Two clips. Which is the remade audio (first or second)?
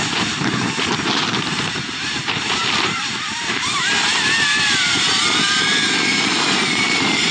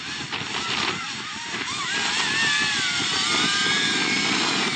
first